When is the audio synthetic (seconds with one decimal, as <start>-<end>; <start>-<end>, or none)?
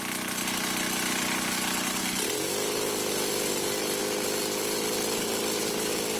none